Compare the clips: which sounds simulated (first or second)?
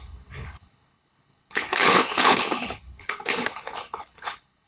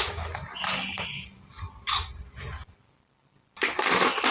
first